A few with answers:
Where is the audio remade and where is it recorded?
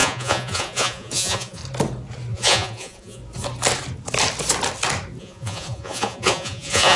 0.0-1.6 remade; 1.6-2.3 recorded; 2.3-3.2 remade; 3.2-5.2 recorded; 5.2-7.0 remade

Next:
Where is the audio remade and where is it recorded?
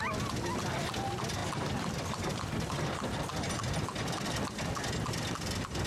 0.0-1.4 recorded; 1.4-2.3 remade; 2.3-5.9 recorded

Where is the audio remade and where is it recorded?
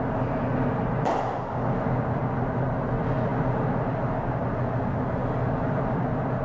0.0-6.4 recorded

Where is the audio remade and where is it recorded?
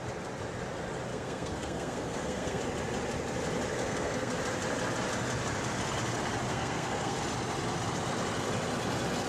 0.0-1.1 recorded; 1.1-2.6 remade; 2.6-3.8 recorded; 3.8-4.4 remade; 4.4-6.5 recorded; 6.5-7.2 remade; 7.2-9.3 recorded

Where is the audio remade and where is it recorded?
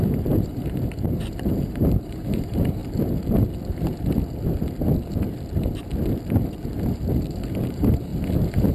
0.0-2.8 remade; 2.8-7.6 recorded; 7.6-8.1 remade; 8.1-8.7 recorded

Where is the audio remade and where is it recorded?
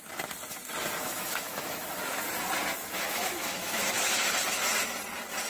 0.0-1.0 recorded; 1.0-2.0 remade; 2.0-2.8 recorded; 2.8-4.3 remade; 4.3-5.5 recorded